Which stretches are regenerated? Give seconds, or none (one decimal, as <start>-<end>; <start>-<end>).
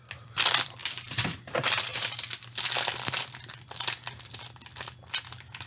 0.0-0.8; 1.4-1.9; 5.3-5.7